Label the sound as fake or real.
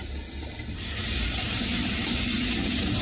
real